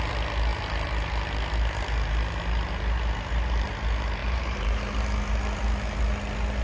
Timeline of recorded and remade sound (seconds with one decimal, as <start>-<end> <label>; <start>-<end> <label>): 0.0-4.2 recorded; 4.2-4.8 remade; 4.8-6.6 recorded